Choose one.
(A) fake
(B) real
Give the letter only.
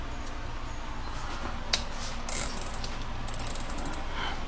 B